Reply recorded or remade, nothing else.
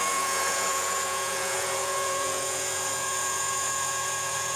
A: remade